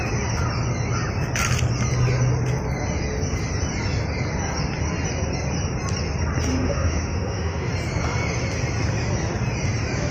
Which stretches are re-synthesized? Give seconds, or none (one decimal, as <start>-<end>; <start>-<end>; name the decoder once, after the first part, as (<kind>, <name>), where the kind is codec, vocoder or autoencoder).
6.5-7.7 (autoencoder, DAC-VAE)

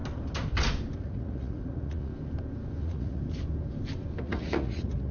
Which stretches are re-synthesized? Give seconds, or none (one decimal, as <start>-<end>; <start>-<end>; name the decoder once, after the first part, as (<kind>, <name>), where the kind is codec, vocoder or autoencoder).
1.0-2.1 (vocoder, Vocos); 2.8-3.2; 4.2-5.1

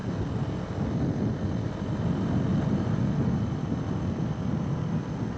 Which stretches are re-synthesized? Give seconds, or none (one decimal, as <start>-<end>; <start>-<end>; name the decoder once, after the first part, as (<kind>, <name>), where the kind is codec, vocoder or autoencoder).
none

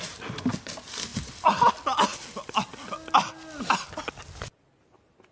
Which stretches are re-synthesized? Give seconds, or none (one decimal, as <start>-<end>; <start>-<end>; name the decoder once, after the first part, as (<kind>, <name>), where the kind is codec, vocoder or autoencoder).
none

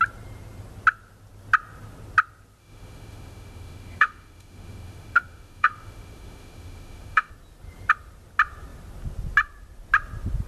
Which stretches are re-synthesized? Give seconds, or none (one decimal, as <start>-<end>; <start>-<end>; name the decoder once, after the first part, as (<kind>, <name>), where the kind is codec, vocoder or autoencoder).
2.6-7.3 (autoencoder, DAC-VAE)

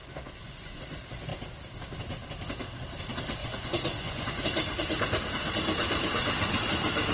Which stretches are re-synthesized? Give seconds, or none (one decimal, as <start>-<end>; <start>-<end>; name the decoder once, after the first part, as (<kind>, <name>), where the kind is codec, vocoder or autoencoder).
0.0-0.8 (vocoder, Vocos); 3.4-4.4

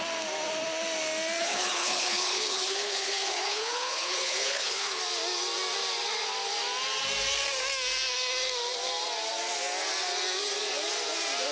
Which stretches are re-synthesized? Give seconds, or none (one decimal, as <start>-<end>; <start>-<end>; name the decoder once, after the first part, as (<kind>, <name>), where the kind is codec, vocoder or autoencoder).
1.4-5.0 (codec, HILCodec)

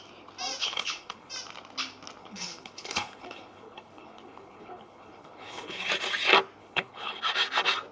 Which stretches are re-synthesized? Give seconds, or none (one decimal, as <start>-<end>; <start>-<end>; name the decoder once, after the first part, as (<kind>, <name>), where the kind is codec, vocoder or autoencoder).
0.6-1.3 (codec, HILCodec); 2.2-5.9; 6.6-7.2